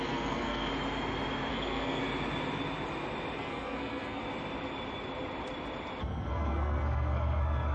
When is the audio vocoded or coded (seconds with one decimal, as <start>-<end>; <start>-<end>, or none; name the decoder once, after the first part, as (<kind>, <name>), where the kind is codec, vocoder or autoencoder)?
0.0-0.7 (codec, SNAC); 1.5-2.0; 3.4-4.2; 6.0-7.7